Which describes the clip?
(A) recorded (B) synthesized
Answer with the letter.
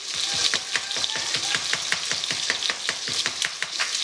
A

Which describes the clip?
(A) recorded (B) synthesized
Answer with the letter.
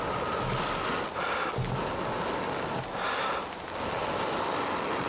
A